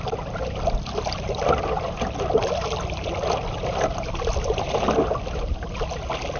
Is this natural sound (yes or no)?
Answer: yes